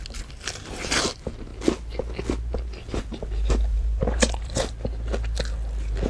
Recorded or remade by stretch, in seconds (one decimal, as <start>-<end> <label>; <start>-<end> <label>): 0.0-3.7 recorded; 3.7-4.7 remade; 4.7-6.1 recorded